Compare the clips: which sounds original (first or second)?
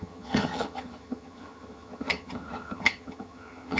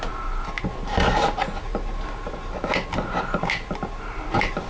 second